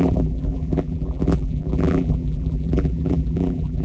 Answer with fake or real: fake